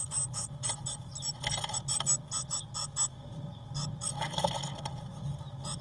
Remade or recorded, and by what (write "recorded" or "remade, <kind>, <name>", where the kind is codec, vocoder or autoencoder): recorded